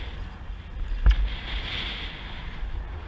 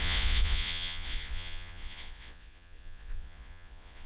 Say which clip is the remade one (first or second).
second